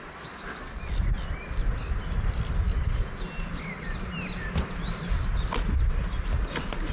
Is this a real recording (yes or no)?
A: yes